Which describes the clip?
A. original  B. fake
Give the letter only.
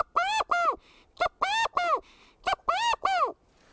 A